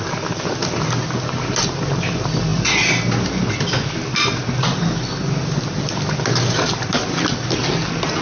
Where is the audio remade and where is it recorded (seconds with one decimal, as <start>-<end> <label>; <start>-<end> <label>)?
0.0-8.2 recorded